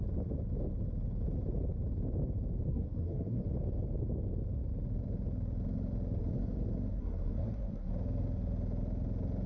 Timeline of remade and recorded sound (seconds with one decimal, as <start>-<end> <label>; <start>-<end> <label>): 0.0-2.7 recorded; 2.7-3.4 remade; 3.4-6.9 recorded; 6.9-7.9 remade; 7.9-9.5 recorded